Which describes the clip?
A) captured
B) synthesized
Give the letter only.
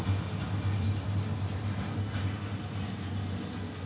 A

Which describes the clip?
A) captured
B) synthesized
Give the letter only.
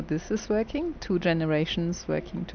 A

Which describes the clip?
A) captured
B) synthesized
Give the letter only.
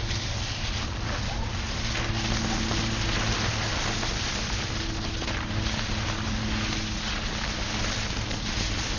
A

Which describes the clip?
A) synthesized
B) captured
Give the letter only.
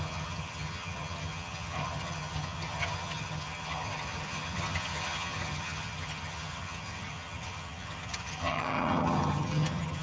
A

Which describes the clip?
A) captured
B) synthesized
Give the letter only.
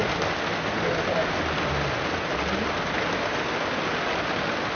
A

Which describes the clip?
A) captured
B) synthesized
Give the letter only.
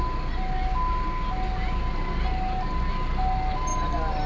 A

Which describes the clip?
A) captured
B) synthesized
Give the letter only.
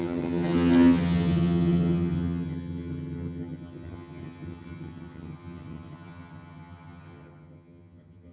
B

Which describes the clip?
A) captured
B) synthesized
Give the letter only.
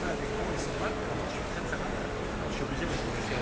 A